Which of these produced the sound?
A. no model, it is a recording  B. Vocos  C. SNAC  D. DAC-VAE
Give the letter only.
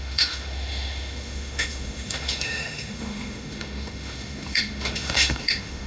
D